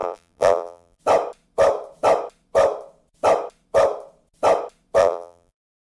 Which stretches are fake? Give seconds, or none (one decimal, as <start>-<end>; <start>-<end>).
0.0-1.0; 5.0-5.9